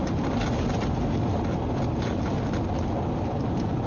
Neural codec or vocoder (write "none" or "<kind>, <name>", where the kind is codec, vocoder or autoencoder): none